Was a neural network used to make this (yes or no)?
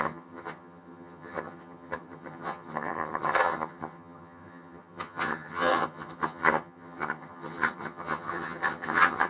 yes